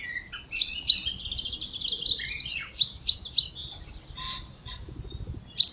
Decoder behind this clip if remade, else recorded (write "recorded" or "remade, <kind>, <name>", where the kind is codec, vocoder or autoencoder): recorded